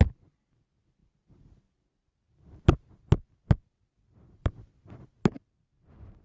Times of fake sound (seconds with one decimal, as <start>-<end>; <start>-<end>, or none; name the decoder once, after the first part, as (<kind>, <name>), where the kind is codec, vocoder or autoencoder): none